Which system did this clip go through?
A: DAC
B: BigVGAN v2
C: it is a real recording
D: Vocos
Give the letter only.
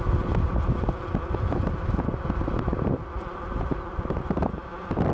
C